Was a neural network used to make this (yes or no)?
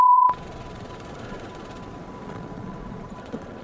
yes